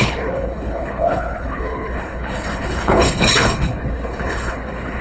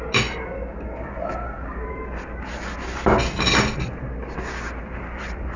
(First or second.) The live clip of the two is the second